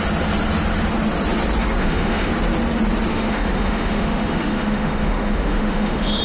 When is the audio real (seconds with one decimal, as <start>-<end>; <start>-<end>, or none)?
0.0-1.8; 2.3-3.1